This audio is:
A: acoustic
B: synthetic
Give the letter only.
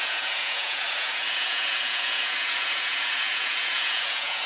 B